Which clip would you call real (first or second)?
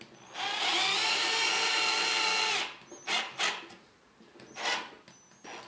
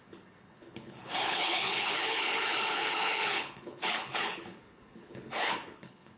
first